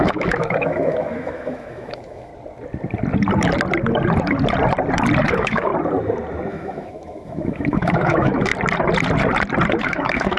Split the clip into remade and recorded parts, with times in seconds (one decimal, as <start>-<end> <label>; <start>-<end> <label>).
0.0-2.3 remade; 2.3-5.3 recorded; 5.3-5.7 remade; 5.7-6.5 recorded; 6.5-8.5 remade; 8.5-9.8 recorded; 9.8-10.4 remade